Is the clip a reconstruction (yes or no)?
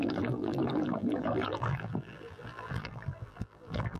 yes